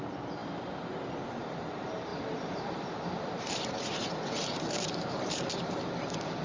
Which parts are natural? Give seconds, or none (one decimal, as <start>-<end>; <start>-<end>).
0.0-2.1; 5.9-6.4